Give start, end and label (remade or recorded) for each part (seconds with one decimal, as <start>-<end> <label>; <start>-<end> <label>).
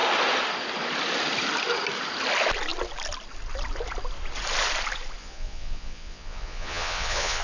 0.0-5.2 recorded; 5.2-7.4 remade